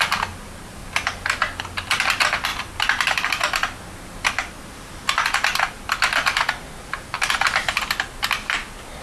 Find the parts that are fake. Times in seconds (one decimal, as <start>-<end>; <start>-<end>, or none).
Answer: none